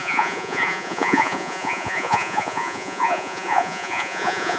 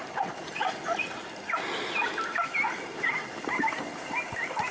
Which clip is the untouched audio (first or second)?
second